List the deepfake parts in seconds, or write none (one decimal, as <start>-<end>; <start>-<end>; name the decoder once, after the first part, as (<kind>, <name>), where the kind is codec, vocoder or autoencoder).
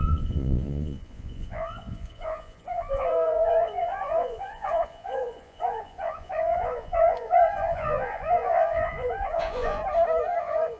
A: 0.0-9.8 (vocoder, Vocos); 10.4-10.8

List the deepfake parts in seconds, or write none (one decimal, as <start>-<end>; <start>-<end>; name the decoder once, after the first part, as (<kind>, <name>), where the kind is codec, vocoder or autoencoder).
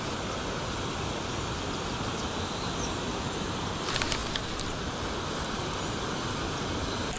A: none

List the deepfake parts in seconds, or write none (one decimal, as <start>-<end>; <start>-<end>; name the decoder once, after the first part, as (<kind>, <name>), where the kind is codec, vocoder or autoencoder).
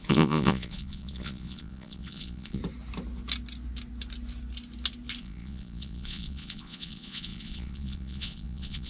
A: 0.0-2.6 (vocoder, Vocos); 5.2-8.9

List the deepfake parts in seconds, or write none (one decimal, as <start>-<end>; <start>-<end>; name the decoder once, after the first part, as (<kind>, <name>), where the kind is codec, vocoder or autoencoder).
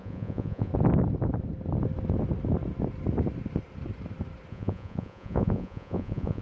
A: 0.0-0.7 (vocoder, Vocos); 4.5-6.4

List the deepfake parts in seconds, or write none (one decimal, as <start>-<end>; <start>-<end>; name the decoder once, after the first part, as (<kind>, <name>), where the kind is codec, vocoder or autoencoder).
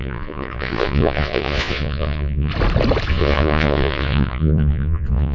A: 0.0-2.5 (vocoder, Vocos); 3.1-5.3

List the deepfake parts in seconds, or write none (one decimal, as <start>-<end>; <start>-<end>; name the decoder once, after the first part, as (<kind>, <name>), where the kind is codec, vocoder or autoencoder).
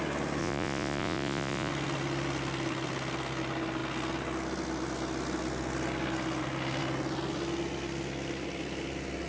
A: 0.4-1.7 (vocoder, Vocos)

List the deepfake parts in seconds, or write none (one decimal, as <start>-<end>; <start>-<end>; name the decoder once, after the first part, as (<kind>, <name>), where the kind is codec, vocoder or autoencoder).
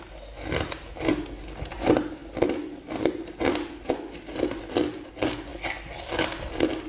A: none